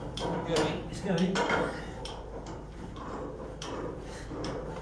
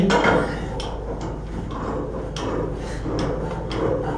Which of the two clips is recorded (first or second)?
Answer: second